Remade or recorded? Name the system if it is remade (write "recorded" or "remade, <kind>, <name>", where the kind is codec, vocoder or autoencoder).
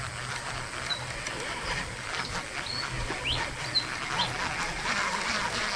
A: recorded